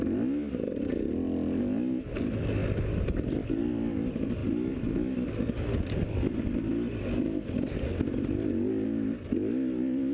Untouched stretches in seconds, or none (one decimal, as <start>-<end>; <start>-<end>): 0.0-10.1